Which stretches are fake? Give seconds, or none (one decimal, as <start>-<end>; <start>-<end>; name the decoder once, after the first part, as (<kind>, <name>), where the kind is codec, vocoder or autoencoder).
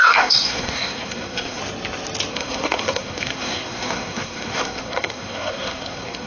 0.0-1.6 (codec, SNAC); 2.3-6.3